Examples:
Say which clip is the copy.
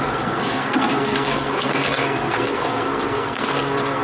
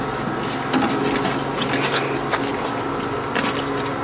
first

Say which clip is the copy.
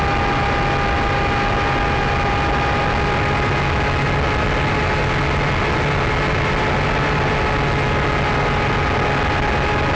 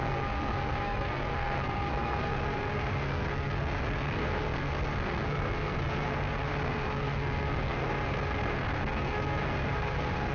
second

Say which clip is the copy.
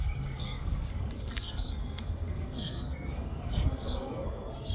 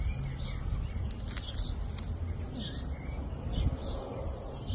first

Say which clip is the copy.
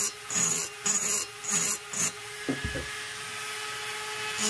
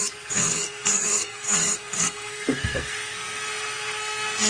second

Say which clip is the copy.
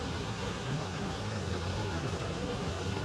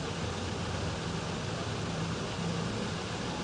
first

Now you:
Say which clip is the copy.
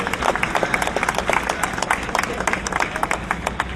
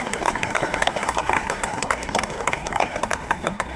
second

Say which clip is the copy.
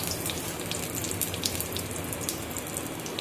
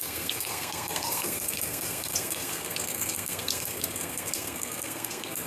second